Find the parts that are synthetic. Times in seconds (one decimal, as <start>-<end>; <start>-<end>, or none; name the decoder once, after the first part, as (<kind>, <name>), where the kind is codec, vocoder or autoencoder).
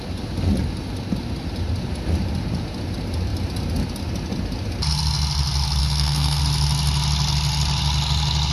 5.8-6.4 (codec, SNAC)